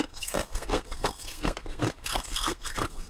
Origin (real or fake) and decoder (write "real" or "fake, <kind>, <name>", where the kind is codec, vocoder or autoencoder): fake, codec, SNAC